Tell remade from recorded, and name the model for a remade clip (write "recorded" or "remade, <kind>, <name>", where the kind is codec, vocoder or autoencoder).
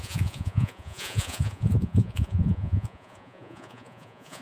remade, vocoder, Vocos